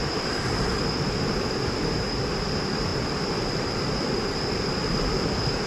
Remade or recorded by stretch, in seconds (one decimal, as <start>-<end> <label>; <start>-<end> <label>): 0.0-0.7 remade; 0.7-5.7 recorded